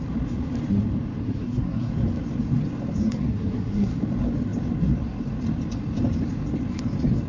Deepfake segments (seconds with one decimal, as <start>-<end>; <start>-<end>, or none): 1.2-1.9; 3.0-3.9